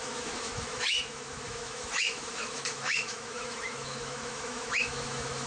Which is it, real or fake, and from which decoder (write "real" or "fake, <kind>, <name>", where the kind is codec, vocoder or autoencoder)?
fake, autoencoder, DAC-VAE